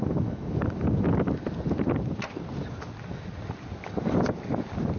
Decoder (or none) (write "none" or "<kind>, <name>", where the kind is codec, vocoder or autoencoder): none